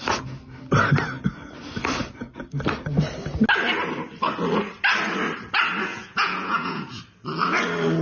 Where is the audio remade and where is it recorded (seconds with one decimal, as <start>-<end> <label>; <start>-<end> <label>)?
0.0-5.9 recorded; 5.9-7.0 remade; 7.0-8.0 recorded